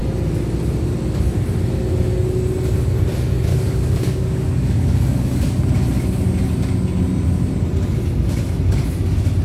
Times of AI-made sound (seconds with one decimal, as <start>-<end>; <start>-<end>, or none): 3.5-5.6